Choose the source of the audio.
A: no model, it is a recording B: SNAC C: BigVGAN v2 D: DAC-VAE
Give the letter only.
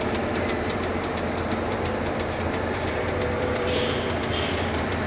C